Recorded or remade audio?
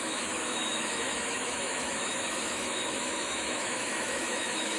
remade